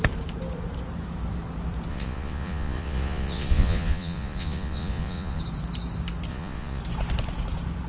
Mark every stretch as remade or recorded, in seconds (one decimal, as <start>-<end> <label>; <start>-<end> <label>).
0.0-1.9 recorded; 1.9-5.4 remade; 5.4-6.3 recorded; 6.3-6.8 remade; 6.8-7.9 recorded